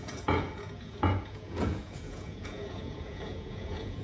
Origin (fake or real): fake